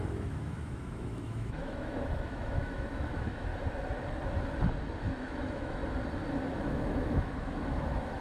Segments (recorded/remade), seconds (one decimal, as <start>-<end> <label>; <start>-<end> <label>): 0.0-3.5 remade; 3.5-5.0 recorded; 5.0-5.8 remade; 5.8-6.6 recorded; 6.6-8.2 remade